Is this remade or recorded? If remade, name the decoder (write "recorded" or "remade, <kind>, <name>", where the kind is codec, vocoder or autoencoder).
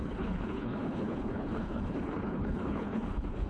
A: remade, codec, HILCodec